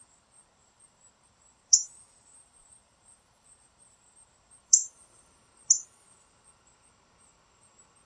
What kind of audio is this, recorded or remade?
remade